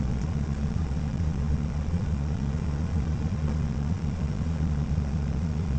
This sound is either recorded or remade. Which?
remade